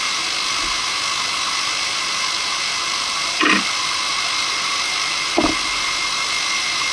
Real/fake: real